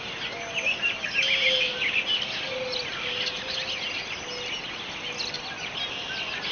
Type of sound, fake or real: real